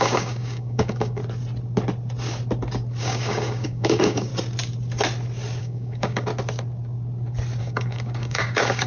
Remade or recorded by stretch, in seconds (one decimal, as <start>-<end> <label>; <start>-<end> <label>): 0.0-1.2 remade; 1.2-3.0 recorded; 3.0-4.3 remade; 4.3-5.6 recorded; 5.6-6.3 remade; 6.3-7.6 recorded; 7.6-8.9 remade